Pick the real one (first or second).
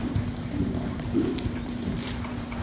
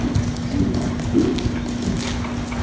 second